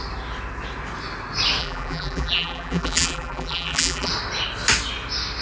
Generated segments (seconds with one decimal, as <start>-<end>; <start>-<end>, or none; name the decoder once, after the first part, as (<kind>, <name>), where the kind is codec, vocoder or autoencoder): 1.6-4.1 (vocoder, BigVGAN v2)